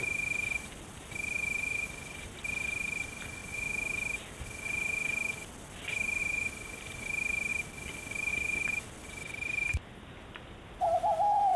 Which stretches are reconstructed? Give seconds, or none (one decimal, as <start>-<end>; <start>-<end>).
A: 0.0-3.4; 6.2-7.5; 8.3-11.6